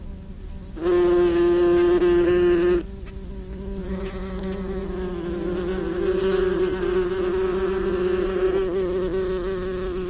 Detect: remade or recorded recorded